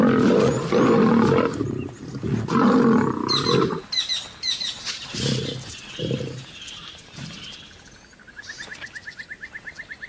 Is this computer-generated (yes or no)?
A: no